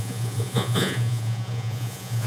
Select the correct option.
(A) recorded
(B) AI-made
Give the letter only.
B